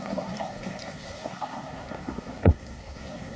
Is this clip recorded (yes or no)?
no